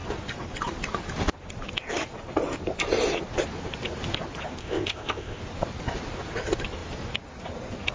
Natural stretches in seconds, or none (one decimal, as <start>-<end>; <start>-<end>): 0.0-4.6; 5.4-7.9